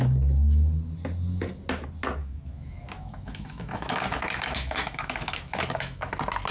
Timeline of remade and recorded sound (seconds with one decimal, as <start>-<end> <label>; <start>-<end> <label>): 0.0-2.2 recorded; 2.2-6.1 remade; 6.1-6.5 recorded